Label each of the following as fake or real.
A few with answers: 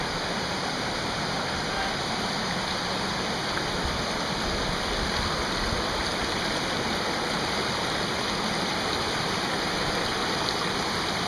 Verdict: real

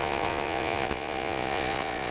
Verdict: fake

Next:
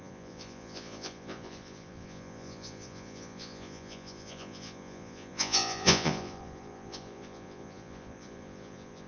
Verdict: fake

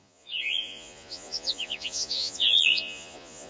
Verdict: fake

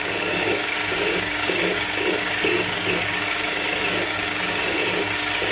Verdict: fake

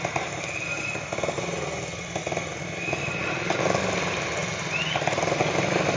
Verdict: real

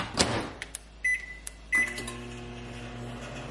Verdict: real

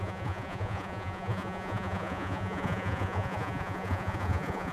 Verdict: fake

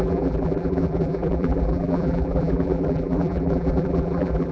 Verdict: fake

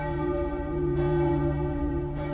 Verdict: fake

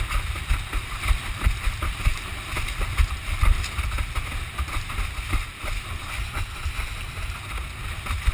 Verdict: real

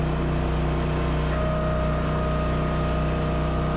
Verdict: real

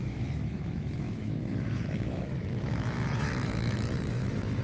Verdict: fake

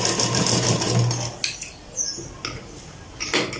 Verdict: real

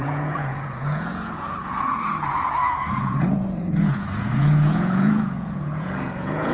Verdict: fake